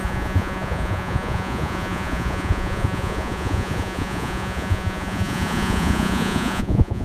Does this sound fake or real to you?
fake